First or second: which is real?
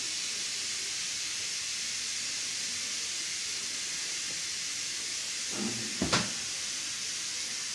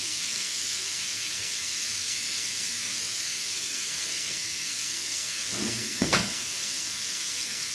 first